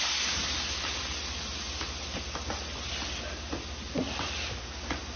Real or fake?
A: real